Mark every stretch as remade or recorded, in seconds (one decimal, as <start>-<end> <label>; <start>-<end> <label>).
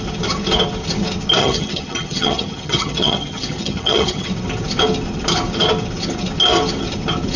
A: 0.0-1.4 recorded; 1.4-4.3 remade; 4.3-7.4 recorded